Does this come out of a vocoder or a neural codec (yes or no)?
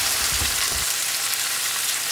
yes